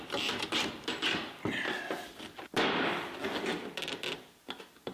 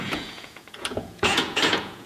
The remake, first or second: second